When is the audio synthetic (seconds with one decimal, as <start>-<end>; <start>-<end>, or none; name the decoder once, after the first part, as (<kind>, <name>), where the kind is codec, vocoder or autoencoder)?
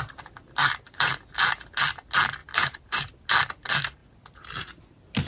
0.6-1.2 (vocoder, BigVGAN v2); 2.4-3.2